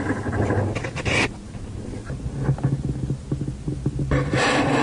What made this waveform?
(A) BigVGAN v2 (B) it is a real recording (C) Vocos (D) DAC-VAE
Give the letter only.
B